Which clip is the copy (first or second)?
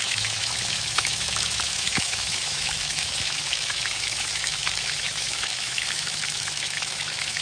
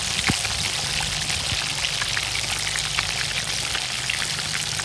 first